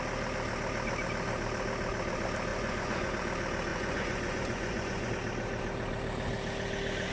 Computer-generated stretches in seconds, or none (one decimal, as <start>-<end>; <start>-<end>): 2.5-3.1; 3.7-5.1